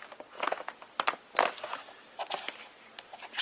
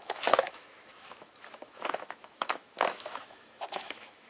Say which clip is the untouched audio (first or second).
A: first